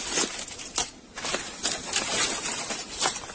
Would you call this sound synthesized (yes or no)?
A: no